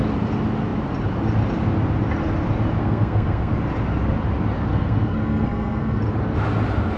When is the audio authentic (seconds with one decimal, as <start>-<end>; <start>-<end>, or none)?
0.0-2.8; 3.5-4.7; 6.0-7.0